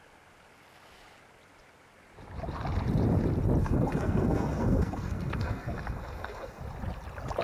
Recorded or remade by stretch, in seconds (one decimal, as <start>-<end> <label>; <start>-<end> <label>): 0.0-3.6 recorded; 3.6-6.6 remade; 6.6-7.4 recorded